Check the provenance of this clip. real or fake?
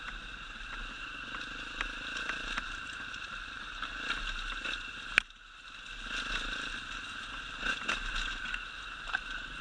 real